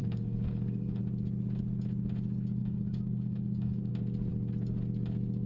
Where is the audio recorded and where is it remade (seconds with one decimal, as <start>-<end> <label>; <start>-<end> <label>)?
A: 0.0-1.0 remade; 1.0-2.6 recorded; 2.6-3.9 remade; 3.9-5.5 recorded